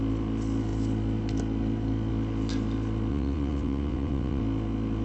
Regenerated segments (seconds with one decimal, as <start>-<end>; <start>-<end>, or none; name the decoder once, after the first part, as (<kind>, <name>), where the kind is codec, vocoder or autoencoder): 3.1-4.4 (vocoder, WaveNeXt)